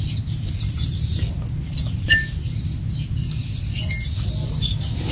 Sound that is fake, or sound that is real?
real